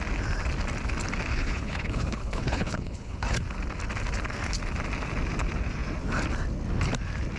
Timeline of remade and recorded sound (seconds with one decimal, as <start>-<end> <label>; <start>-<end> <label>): 0.0-1.3 recorded; 1.3-3.4 remade; 3.4-7.4 recorded